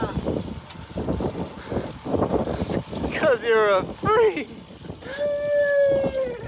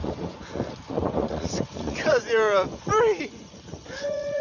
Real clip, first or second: first